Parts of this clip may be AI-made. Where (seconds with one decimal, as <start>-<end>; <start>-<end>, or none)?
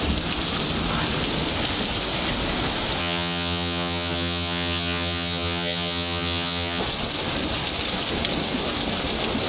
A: 3.0-6.8